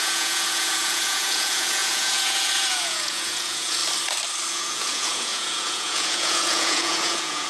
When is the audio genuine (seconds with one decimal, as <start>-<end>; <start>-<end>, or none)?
3.8-4.5